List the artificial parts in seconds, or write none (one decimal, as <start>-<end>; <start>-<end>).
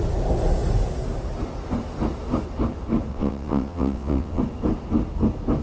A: 3.1-4.4